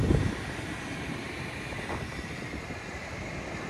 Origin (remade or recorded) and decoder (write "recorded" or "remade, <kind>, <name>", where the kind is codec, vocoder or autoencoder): remade, vocoder, BigVGAN v2